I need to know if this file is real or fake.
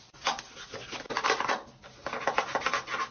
real